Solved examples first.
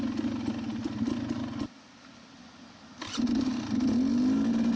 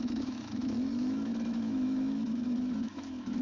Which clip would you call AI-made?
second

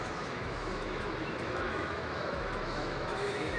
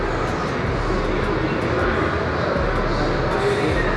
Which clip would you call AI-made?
first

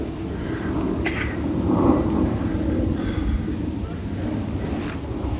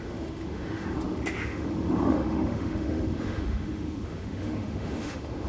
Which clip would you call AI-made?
second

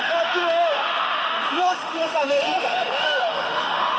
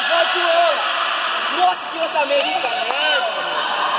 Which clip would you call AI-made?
first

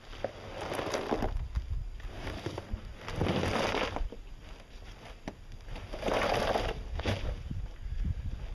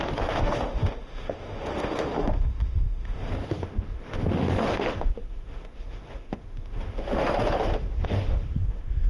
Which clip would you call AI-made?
second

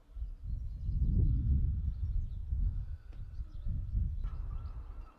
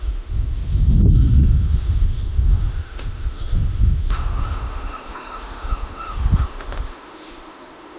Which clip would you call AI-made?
second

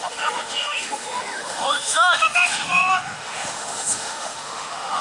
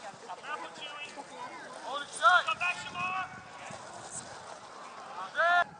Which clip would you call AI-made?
first